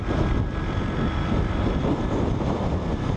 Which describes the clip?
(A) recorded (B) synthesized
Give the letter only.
A